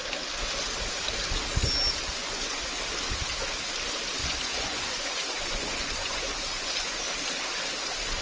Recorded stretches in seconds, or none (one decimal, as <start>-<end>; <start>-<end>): 0.0-2.2; 2.8-4.2; 7.0-8.2